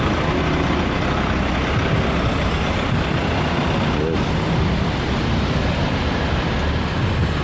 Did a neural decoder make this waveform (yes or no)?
no